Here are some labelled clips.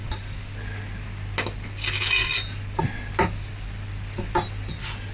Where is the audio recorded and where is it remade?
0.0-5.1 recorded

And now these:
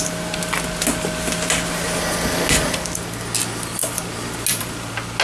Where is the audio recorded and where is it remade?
0.0-5.2 recorded

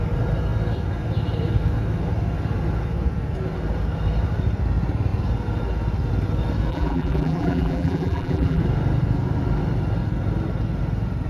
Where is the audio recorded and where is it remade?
0.0-6.7 recorded; 6.7-8.6 remade; 8.6-11.3 recorded

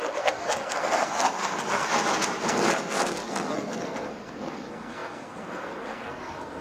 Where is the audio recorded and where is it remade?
0.0-1.9 remade; 1.9-2.4 recorded; 2.4-6.6 remade

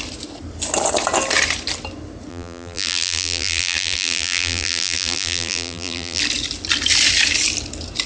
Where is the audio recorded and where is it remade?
0.0-2.3 recorded; 2.3-6.2 remade; 6.2-8.1 recorded

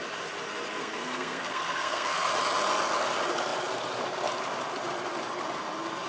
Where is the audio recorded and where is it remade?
0.0-0.8 recorded; 0.8-2.3 remade; 2.3-6.1 recorded

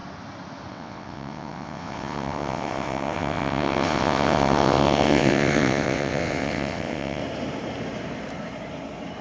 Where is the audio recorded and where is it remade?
0.0-0.7 recorded; 0.7-7.2 remade; 7.2-9.2 recorded

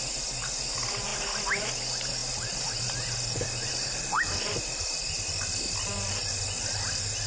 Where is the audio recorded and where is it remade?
0.0-7.3 recorded